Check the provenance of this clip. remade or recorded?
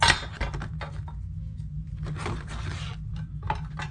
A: recorded